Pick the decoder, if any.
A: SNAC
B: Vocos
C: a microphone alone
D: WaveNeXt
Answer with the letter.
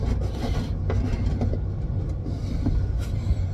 C